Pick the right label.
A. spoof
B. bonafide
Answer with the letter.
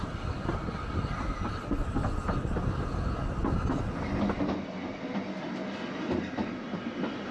B